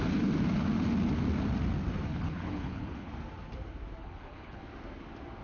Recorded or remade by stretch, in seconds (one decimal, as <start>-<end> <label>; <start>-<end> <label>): 0.0-2.1 recorded; 2.1-3.1 remade; 3.1-4.0 recorded; 4.0-4.6 remade; 4.6-5.4 recorded